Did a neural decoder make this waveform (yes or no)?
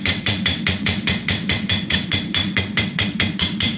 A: yes